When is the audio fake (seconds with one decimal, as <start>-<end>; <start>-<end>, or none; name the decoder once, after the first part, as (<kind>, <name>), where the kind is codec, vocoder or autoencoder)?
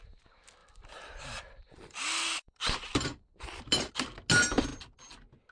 0.6-3.9 (vocoder, BigVGAN v2)